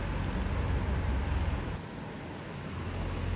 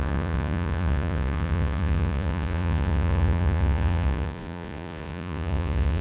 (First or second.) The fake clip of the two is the second